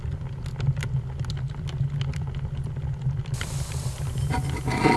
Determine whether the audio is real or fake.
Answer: real